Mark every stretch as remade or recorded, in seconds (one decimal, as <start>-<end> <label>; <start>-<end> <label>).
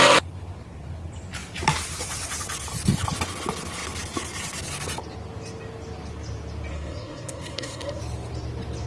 0.0-6.7 recorded; 6.7-8.0 remade; 8.0-8.9 recorded